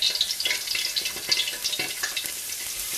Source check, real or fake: real